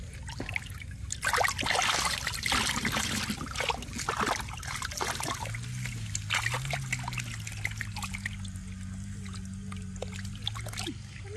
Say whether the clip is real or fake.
real